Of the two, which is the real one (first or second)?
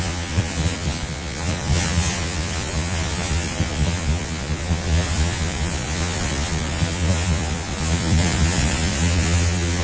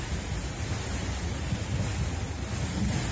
second